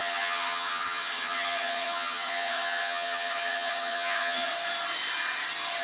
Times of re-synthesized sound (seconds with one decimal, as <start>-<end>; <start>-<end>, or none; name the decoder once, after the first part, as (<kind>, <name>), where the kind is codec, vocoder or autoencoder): 0.0-4.5 (vocoder, HiFi-GAN)